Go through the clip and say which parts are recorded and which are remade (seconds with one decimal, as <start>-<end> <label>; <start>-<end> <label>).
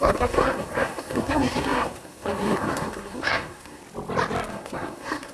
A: 0.0-3.8 remade; 3.8-4.5 recorded; 4.5-5.3 remade